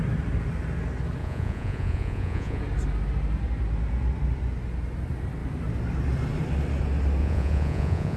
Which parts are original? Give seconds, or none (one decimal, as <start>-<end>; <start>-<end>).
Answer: 0.0-1.2; 2.6-7.2